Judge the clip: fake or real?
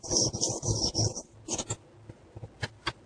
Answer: real